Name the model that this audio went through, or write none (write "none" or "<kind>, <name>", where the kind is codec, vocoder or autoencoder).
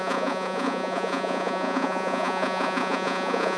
vocoder, Vocos